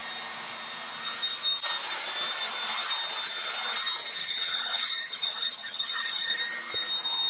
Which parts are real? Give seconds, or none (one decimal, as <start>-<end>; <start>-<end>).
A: 0.0-4.2; 6.4-7.3